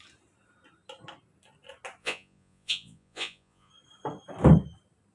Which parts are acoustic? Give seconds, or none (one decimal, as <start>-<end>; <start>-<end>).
0.0-2.0; 3.7-5.1

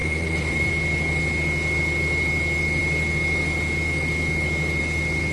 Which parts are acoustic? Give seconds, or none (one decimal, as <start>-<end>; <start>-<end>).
0.7-5.3